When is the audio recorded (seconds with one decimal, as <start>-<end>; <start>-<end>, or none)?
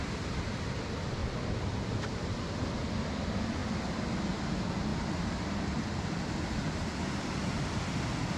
0.0-4.9; 7.8-8.4